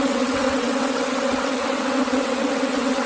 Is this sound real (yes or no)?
no